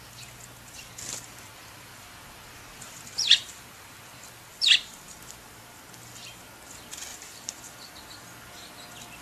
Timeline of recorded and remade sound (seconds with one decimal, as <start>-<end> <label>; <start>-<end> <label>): 0.0-7.1 recorded; 7.1-7.9 remade; 7.9-9.2 recorded